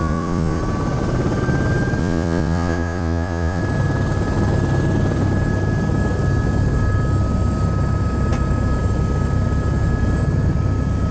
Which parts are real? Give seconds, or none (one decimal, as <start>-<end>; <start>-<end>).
0.6-2.0; 3.6-11.1